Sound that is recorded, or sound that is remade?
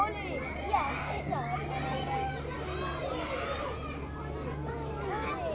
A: recorded